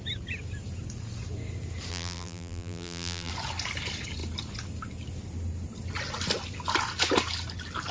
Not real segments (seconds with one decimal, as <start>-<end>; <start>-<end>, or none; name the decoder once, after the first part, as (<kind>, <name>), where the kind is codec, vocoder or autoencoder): 1.9-3.3 (vocoder, BigVGAN v2)